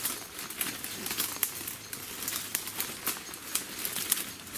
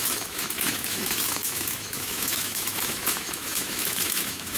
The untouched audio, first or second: first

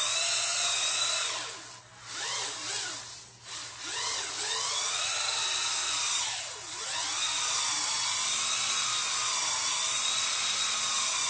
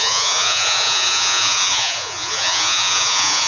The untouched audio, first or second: first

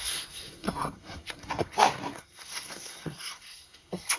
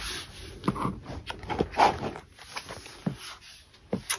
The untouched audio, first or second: second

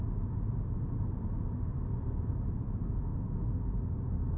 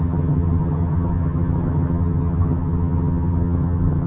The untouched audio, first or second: first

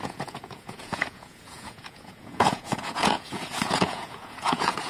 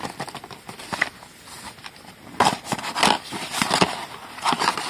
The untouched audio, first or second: second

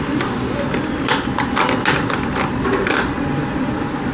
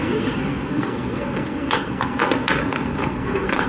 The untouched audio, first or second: first